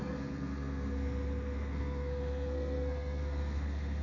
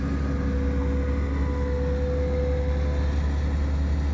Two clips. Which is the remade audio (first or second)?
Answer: first